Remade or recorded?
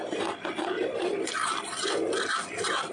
recorded